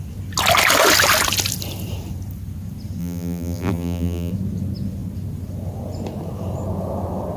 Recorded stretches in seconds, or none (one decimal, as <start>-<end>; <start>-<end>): 0.0-3.0; 4.3-7.4